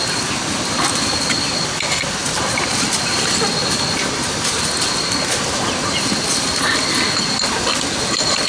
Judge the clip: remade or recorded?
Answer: recorded